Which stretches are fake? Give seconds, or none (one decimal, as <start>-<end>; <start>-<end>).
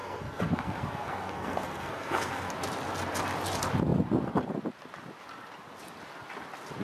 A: 0.0-2.5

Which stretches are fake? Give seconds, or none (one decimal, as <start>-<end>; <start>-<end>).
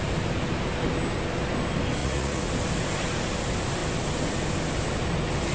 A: 2.0-2.5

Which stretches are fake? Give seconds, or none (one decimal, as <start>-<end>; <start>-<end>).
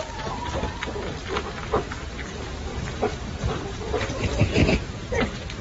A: 2.7-4.4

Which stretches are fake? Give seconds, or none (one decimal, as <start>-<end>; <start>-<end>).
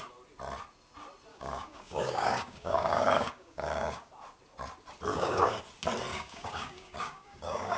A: 1.3-4.1; 5.1-5.6; 6.1-7.8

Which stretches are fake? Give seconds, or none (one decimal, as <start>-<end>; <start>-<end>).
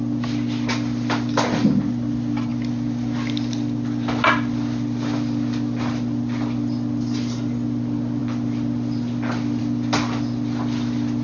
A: none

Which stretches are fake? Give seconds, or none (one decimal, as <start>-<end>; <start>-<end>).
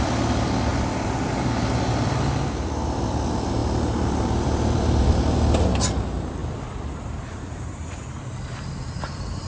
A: 0.0-9.5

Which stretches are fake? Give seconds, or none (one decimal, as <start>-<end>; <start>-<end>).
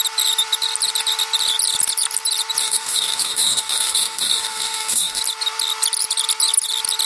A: 2.6-5.2